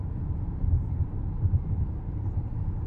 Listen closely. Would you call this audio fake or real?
fake